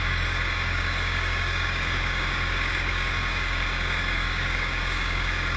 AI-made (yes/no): yes